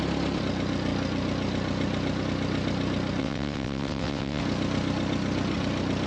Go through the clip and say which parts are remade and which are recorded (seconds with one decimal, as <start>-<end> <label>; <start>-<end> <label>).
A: 0.0-3.2 recorded; 3.2-4.4 remade; 4.4-6.1 recorded